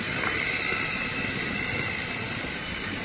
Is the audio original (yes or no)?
yes